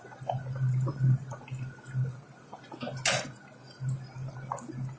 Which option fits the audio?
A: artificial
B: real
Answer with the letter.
B